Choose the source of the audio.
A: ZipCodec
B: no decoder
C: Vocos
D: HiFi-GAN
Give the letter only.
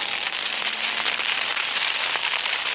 B